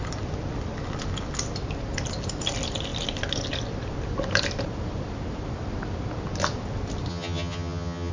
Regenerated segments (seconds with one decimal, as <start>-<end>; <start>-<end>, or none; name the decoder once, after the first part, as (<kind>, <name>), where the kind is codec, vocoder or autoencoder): 7.1-8.1 (vocoder, HiFi-GAN)